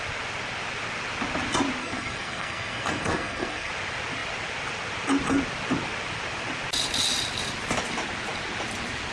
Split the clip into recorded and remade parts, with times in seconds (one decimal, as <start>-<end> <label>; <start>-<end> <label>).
0.0-1.8 recorded; 1.8-3.7 remade; 3.7-9.1 recorded